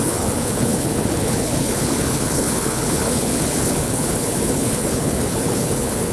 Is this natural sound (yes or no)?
no